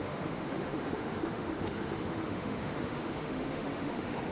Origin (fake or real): fake